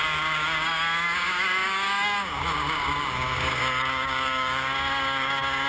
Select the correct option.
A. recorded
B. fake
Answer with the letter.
B